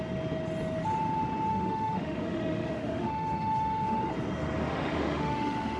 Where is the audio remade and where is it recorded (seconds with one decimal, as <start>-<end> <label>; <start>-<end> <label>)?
0.0-1.5 recorded; 1.5-4.0 remade; 4.0-4.6 recorded; 4.6-5.8 remade